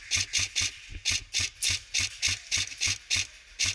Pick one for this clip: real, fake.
real